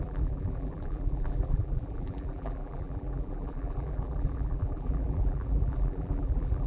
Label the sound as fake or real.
fake